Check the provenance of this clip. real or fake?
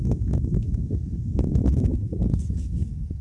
fake